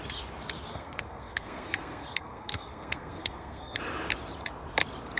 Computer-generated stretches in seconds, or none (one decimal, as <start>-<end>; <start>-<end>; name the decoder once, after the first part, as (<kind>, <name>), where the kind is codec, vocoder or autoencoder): 0.7-3.8 (codec, SNAC)